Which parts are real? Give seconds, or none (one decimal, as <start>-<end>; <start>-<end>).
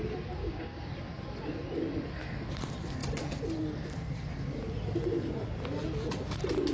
0.0-0.4; 0.9-6.7